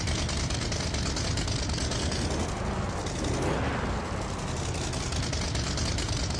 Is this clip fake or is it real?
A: real